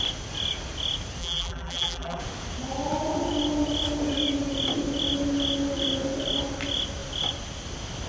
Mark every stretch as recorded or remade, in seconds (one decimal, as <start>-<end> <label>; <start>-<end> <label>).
0.0-1.2 recorded; 1.2-2.2 remade; 2.2-8.1 recorded